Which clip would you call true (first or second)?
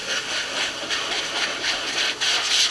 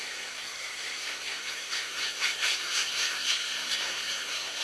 first